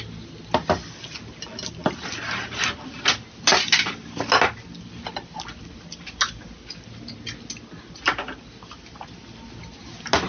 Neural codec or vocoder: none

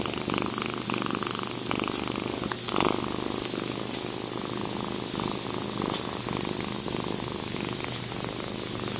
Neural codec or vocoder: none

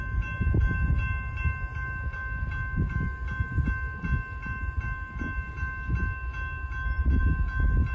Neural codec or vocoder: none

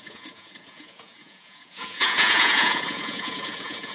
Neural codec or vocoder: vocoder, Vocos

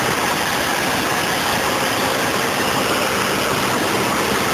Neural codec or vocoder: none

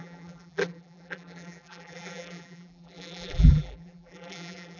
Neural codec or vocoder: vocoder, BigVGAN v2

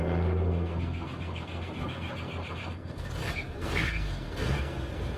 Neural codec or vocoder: codec, SNAC